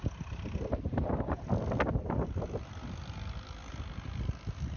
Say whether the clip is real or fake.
real